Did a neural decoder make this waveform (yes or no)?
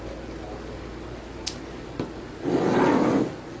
no